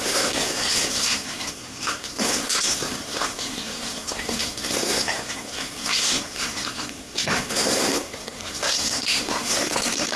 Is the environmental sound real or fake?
fake